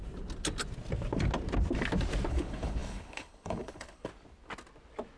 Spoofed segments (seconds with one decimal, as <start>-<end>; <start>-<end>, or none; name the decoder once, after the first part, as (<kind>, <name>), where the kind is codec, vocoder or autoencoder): 2.3-4.1 (codec, HILCodec)